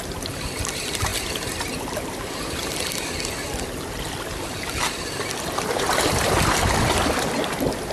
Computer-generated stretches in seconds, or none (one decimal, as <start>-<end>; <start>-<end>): none